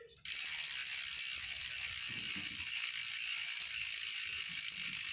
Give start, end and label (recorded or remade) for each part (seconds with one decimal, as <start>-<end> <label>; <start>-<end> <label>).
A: 0.0-5.1 recorded